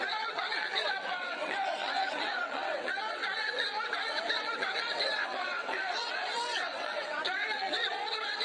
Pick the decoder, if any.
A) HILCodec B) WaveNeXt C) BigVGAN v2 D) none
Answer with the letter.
B